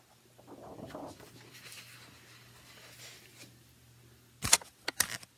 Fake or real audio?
real